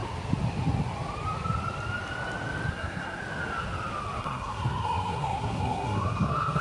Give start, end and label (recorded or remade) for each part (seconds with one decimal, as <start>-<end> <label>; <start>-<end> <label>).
0.0-2.7 recorded; 2.7-3.2 remade; 3.2-4.2 recorded; 4.2-6.6 remade